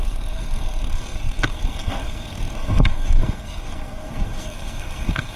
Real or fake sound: fake